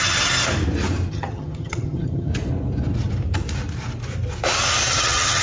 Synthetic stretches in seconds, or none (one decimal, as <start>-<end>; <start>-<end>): 0.0-0.4; 1.1-2.3; 4.9-5.4